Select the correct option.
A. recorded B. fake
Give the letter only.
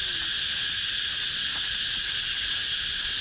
A